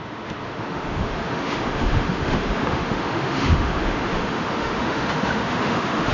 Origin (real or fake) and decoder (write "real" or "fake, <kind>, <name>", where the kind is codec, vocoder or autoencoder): fake, autoencoder, DAC-VAE